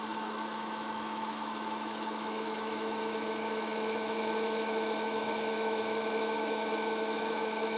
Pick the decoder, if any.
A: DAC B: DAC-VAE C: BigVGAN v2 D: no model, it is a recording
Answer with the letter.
B